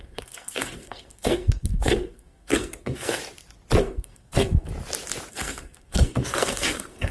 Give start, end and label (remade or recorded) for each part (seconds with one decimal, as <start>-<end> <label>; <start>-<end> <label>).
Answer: 0.0-3.2 remade; 3.2-3.8 recorded; 3.8-4.7 remade; 4.7-5.3 recorded; 5.3-7.1 remade